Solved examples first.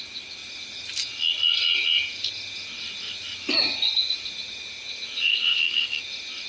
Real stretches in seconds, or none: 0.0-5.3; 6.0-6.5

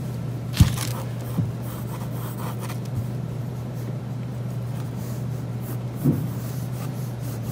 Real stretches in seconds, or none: 0.9-3.0

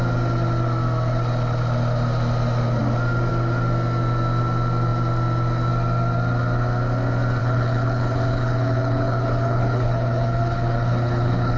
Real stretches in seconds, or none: 0.0-7.4